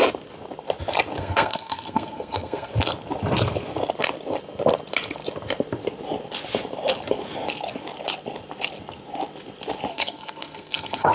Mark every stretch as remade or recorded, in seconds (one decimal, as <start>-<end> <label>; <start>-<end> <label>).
0.0-1.2 recorded; 1.2-2.7 remade; 2.7-9.9 recorded; 9.9-11.1 remade